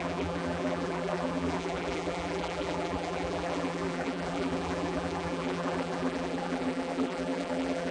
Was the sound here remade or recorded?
remade